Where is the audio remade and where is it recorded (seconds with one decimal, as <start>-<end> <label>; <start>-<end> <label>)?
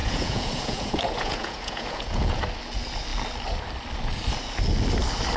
0.0-2.4 remade; 2.4-5.4 recorded